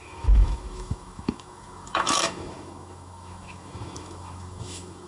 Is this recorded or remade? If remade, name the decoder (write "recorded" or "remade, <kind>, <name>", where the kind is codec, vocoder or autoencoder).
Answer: remade, autoencoder, DAC-VAE